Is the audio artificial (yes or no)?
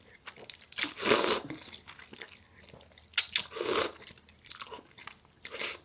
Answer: no